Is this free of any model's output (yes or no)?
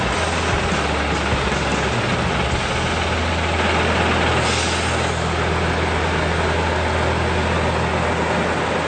yes